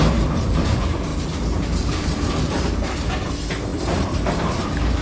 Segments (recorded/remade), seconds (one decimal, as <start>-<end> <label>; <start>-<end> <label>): 0.0-5.0 remade